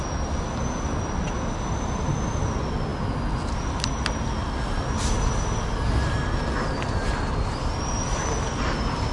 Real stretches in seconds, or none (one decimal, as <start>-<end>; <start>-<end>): 0.0-9.1